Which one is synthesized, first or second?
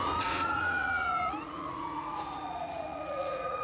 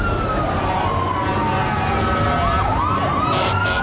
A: first